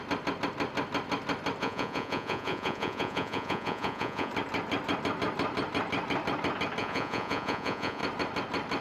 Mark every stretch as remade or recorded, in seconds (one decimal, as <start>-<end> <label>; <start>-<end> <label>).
0.0-1.6 recorded; 1.6-4.3 remade; 4.3-6.8 recorded; 6.8-8.0 remade; 8.0-8.8 recorded